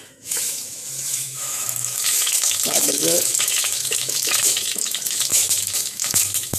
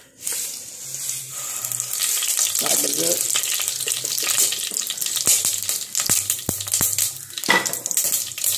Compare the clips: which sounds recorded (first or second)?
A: second